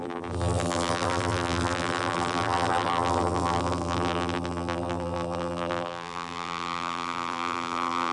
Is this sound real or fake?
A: fake